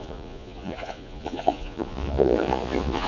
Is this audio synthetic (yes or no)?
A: yes